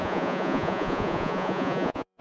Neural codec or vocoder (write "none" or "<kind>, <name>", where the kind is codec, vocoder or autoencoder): vocoder, Vocos